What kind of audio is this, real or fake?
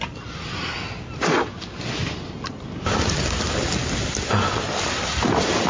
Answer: real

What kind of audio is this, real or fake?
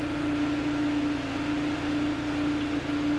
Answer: real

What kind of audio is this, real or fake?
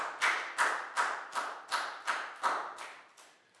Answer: real